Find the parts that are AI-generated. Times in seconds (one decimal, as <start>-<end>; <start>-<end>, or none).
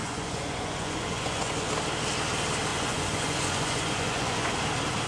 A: 0.0-1.7; 2.7-4.6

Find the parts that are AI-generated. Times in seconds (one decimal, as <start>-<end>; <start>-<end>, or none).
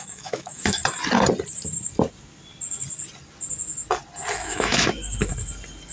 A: 0.0-0.8; 4.3-5.3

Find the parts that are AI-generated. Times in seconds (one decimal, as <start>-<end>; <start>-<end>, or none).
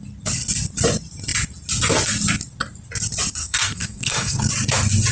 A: 3.4-4.4